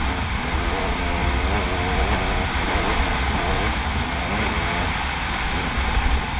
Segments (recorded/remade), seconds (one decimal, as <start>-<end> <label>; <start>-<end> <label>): 0.0-6.4 recorded